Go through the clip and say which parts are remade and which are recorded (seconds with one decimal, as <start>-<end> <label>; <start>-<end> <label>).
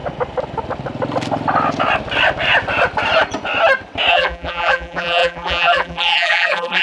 0.0-4.1 recorded; 4.1-6.8 remade